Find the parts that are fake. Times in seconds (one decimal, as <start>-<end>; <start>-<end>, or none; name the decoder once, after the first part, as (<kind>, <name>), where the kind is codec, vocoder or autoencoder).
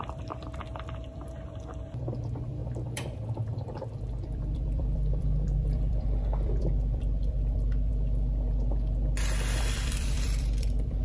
0.0-7.9 (vocoder, BigVGAN v2); 9.6-11.0